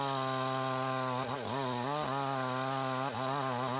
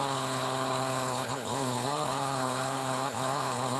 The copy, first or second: second